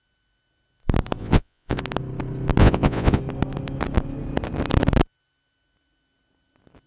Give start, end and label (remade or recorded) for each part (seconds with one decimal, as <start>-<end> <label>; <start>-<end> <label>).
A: 0.0-1.2 recorded; 1.2-1.8 remade; 1.8-2.6 recorded; 2.6-3.2 remade; 3.2-6.9 recorded